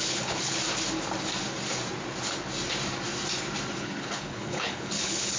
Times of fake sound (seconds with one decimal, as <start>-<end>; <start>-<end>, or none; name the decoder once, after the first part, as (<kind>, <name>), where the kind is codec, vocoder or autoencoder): 0.0-0.6 (codec, HILCodec); 3.8-5.4